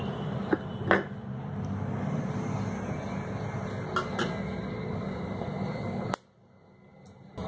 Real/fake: real